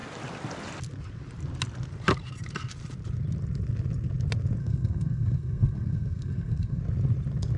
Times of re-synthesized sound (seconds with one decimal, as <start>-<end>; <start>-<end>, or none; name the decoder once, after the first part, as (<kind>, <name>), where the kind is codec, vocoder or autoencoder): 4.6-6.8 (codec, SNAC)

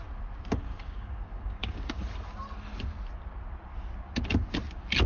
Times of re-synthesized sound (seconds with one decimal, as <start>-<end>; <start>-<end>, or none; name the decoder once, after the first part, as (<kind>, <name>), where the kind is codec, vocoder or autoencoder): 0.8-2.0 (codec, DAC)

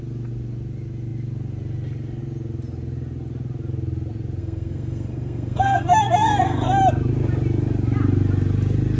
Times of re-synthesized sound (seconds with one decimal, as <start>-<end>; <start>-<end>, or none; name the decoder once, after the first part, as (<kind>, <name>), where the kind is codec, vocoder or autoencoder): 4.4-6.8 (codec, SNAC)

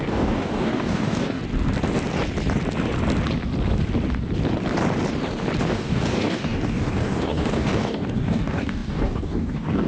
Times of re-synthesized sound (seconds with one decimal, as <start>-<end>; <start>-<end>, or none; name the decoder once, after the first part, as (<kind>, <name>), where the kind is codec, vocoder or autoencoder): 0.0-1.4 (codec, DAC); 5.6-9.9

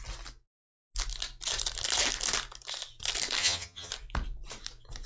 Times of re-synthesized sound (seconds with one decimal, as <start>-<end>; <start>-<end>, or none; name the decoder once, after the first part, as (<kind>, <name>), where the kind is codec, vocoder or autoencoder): 3.4-3.9 (vocoder, HiFi-GAN)